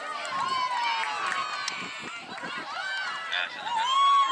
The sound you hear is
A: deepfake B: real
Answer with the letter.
B